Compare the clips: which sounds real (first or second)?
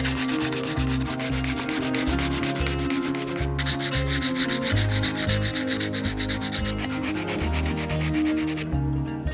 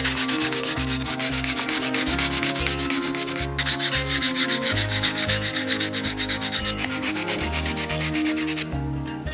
first